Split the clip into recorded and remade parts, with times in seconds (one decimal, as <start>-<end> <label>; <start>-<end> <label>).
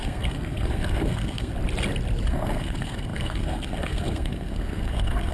0.0-1.5 remade; 1.5-2.3 recorded; 2.3-5.3 remade